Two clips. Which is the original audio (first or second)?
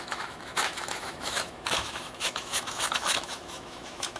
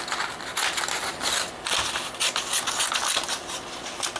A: second